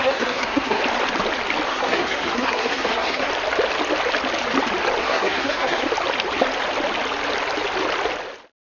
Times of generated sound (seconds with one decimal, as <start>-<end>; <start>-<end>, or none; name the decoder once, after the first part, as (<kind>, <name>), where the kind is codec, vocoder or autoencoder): 0.0-0.8 (codec, SNAC); 1.7-3.3; 5.0-5.9